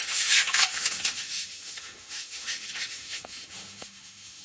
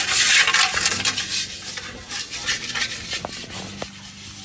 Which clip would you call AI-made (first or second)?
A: first